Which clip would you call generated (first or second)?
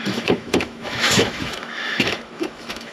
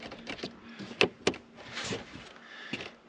first